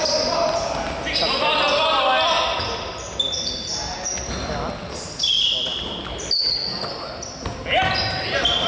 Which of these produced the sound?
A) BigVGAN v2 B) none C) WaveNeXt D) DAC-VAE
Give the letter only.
B